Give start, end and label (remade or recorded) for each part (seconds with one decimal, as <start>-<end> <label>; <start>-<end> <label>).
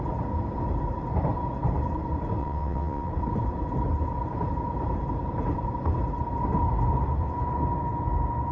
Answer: 0.0-2.4 recorded; 2.4-3.1 remade; 3.1-8.5 recorded